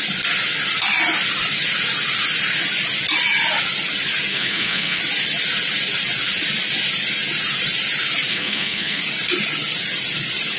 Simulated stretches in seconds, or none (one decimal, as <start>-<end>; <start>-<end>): 4.3-5.0; 8.3-9.0